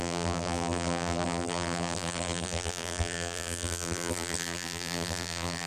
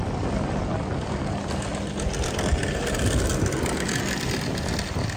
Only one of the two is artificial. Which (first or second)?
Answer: first